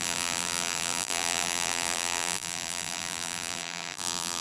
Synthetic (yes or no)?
yes